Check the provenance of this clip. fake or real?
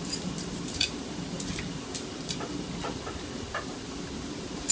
fake